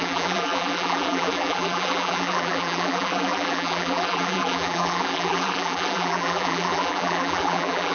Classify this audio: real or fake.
fake